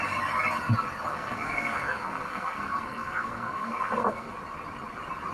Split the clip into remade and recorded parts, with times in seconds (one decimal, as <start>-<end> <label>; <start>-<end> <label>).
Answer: 0.0-1.1 recorded; 1.1-4.3 remade; 4.3-5.3 recorded